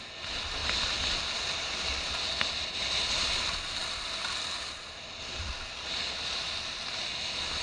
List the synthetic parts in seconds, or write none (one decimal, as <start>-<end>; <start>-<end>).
none